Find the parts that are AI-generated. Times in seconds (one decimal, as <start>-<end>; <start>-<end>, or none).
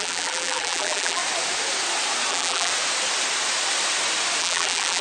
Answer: 0.0-1.2; 2.3-2.7; 4.4-5.0